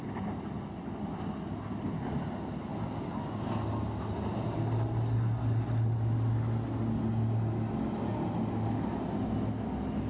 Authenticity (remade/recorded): recorded